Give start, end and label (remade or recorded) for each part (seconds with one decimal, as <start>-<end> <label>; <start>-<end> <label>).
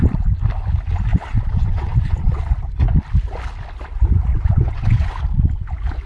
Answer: 0.0-1.1 recorded; 1.1-2.4 remade; 2.4-4.3 recorded; 4.3-5.1 remade; 5.1-6.1 recorded